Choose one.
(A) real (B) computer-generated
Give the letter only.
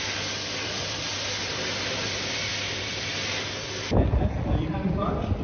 A